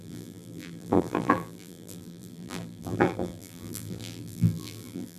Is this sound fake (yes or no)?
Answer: yes